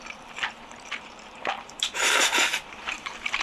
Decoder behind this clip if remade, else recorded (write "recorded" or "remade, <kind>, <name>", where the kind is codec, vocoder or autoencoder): remade, vocoder, BigVGAN v2